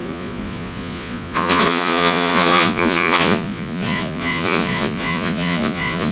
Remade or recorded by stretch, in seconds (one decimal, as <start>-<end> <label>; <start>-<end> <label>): 0.0-6.1 remade